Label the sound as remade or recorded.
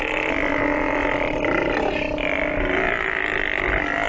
recorded